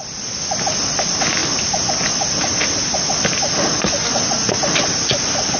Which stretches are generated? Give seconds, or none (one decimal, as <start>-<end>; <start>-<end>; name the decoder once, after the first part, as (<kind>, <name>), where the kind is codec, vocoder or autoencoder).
none